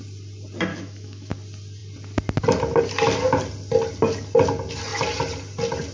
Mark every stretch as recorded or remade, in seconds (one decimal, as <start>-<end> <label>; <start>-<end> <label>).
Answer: 0.0-0.7 recorded; 0.7-1.3 remade; 1.3-5.9 recorded